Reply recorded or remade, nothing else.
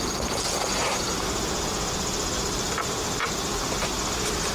recorded